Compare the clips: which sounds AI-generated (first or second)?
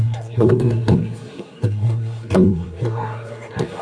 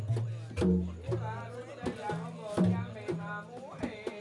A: first